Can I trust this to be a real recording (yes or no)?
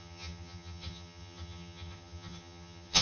no